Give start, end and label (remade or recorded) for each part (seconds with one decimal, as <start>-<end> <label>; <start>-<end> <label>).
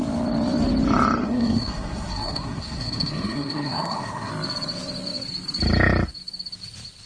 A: 0.0-1.2 recorded; 1.2-4.3 remade; 4.3-7.1 recorded